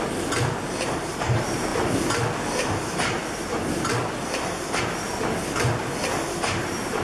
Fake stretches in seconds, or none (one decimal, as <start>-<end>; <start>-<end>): 1.7-4.8